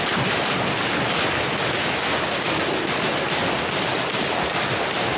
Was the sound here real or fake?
real